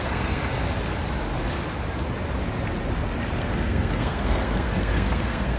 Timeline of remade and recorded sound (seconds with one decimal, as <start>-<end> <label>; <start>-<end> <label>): 0.0-0.4 remade; 0.4-3.4 recorded; 3.4-5.6 remade